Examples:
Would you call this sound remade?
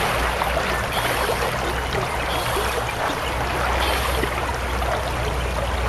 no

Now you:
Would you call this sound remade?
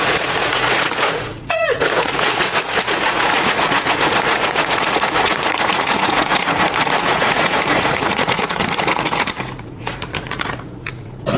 yes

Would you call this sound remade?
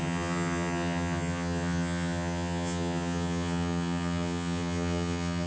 yes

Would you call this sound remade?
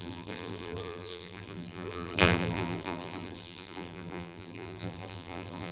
yes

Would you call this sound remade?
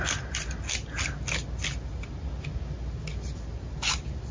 no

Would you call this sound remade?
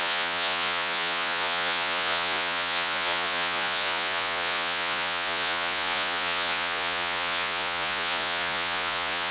yes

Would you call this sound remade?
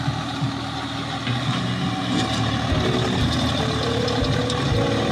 no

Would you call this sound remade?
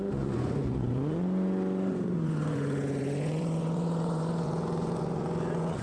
yes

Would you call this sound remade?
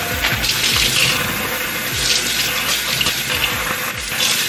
no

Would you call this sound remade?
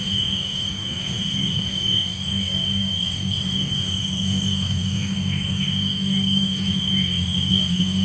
yes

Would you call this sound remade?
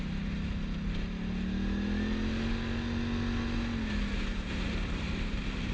no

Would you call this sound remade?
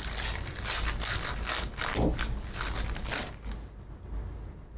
no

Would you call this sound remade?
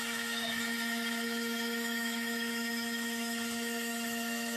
yes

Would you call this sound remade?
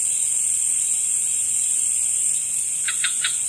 no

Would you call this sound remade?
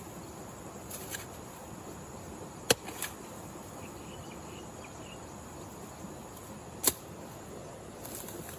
no